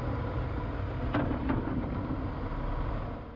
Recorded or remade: recorded